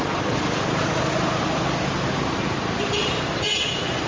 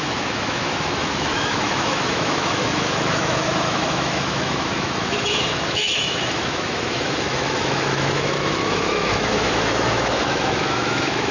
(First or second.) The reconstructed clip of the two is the second